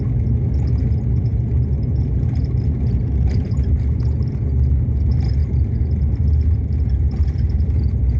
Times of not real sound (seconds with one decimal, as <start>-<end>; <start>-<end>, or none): none